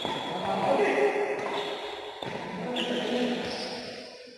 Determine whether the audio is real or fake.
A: real